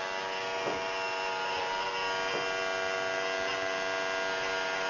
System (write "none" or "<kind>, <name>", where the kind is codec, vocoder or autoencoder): none